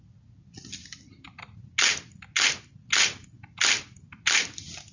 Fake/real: real